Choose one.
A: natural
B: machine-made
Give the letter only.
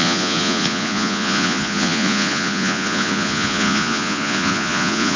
B